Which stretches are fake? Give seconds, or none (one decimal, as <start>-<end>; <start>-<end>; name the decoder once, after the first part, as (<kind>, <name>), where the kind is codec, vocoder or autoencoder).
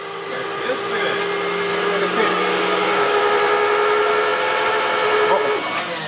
1.7-3.1 (codec, DAC)